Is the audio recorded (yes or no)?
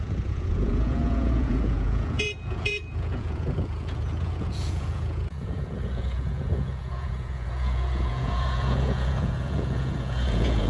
no